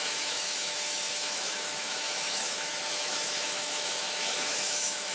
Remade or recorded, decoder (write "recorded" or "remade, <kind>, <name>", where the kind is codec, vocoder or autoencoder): remade, autoencoder, DAC-VAE